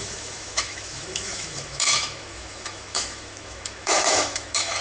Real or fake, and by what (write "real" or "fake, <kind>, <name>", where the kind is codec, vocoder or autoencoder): fake, autoencoder, DAC-VAE